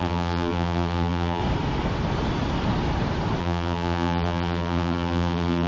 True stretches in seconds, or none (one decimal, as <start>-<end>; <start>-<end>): 1.4-3.4